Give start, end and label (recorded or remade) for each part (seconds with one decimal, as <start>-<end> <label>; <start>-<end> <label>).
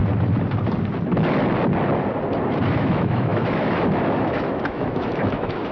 0.0-2.7 recorded; 2.7-5.7 remade